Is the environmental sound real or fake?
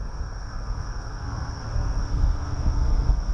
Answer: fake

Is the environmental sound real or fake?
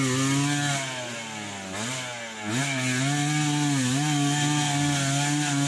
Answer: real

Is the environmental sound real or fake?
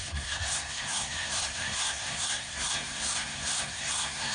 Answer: fake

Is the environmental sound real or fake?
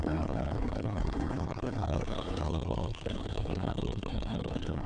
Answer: fake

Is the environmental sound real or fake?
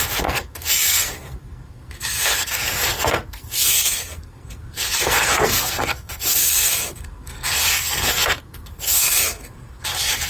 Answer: fake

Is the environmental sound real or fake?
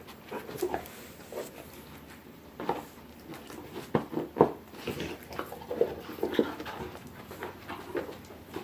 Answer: real